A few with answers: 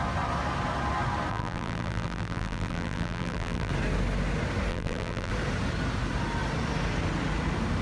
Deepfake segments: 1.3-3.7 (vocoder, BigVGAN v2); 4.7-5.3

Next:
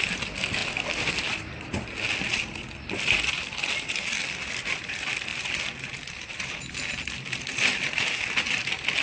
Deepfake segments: none

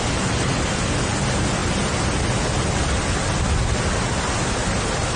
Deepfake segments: none

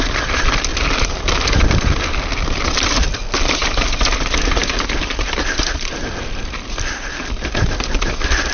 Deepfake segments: 0.0-8.5 (vocoder, BigVGAN v2)